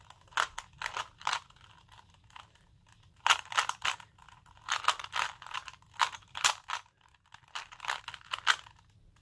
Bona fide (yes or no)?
yes